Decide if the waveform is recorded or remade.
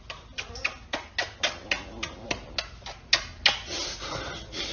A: recorded